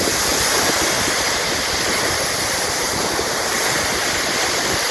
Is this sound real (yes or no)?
no